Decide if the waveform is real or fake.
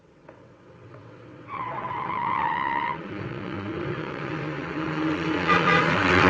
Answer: fake